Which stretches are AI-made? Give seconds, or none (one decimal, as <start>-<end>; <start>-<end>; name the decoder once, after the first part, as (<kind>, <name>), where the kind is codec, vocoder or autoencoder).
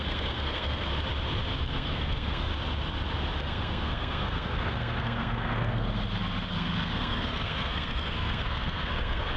0.0-0.9 (codec, SNAC); 1.6-2.5; 3.4-6.0; 6.5-9.4